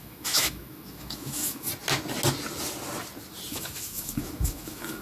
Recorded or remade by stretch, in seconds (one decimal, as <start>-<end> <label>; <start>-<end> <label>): 0.0-1.7 remade; 1.7-3.5 recorded; 3.5-5.0 remade